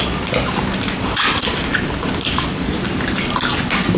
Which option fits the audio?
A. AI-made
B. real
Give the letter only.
B